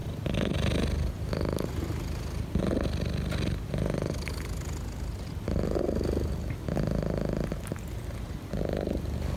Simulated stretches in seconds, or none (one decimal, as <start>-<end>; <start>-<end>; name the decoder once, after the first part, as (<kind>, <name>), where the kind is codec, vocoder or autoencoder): none